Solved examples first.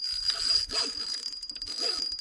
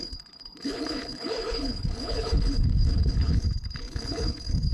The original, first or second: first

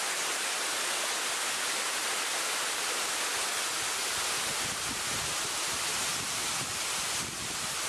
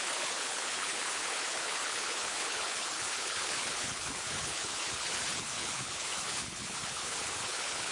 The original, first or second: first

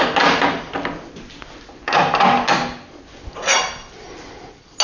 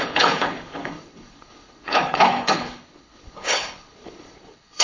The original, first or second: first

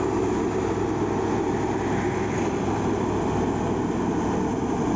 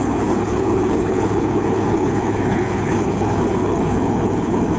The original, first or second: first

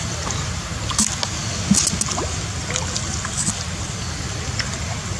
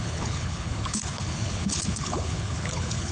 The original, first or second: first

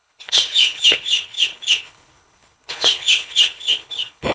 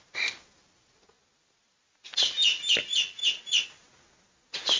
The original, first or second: second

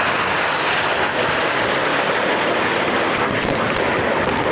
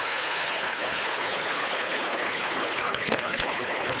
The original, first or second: first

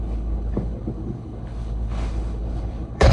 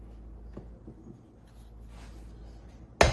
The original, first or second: second